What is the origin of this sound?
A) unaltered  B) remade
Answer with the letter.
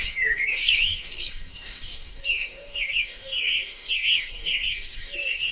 B